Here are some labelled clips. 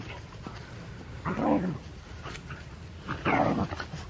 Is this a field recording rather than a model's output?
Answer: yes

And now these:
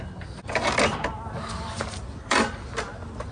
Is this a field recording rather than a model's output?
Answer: yes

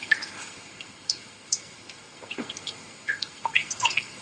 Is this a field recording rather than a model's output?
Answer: no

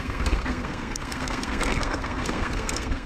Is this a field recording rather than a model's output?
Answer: no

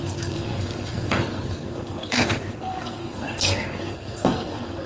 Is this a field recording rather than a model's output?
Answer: no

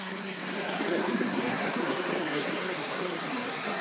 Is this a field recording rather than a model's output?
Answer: no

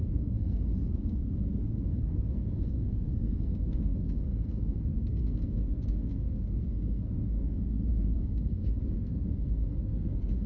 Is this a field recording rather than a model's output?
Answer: no